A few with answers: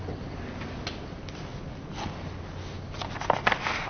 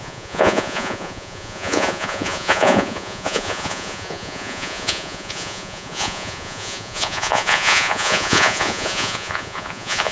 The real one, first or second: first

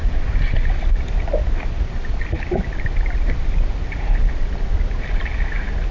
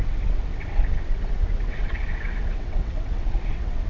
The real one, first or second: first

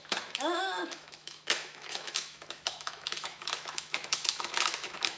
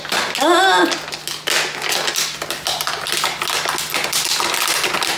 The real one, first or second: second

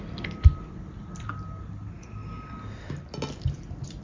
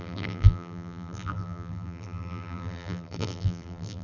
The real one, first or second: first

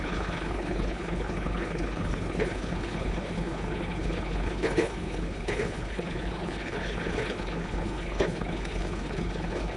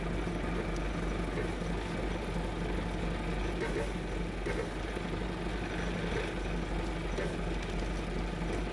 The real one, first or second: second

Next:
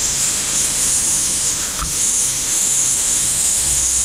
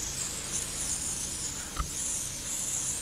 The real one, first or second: second